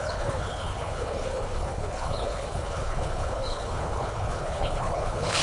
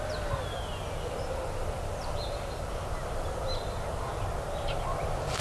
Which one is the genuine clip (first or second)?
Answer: second